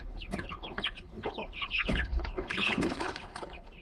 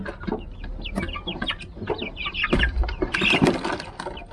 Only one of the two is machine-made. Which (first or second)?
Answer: first